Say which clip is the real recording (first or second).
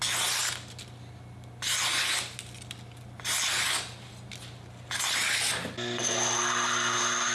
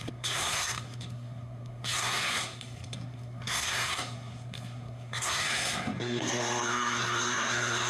first